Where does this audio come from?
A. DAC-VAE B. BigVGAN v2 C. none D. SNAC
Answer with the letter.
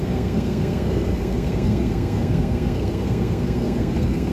D